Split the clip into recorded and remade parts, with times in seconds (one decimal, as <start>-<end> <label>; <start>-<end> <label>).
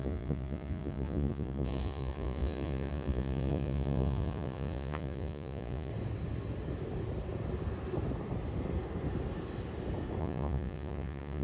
0.0-5.9 remade; 5.9-10.2 recorded; 10.2-11.4 remade